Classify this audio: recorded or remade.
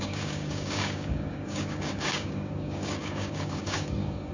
remade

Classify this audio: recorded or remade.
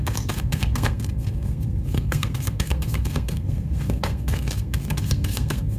remade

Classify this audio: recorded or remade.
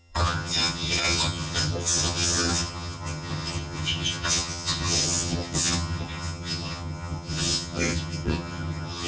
remade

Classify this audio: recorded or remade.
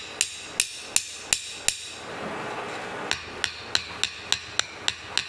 recorded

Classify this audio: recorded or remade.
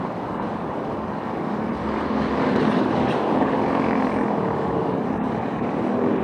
remade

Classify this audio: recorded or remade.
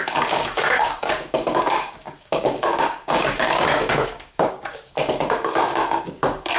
remade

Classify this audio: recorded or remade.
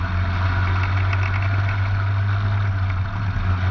recorded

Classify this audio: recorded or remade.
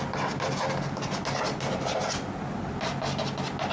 recorded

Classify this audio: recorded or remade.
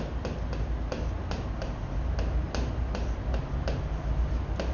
recorded